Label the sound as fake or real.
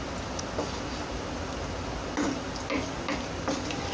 real